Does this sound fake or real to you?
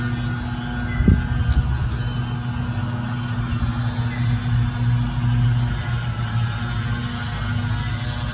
real